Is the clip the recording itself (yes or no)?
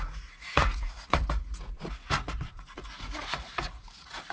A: no